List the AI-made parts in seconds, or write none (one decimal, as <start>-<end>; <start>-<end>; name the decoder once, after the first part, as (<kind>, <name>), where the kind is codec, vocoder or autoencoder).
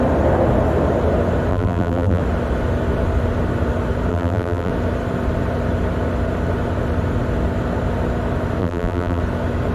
1.5-2.2 (vocoder, BigVGAN v2); 4.1-4.7; 8.6-9.2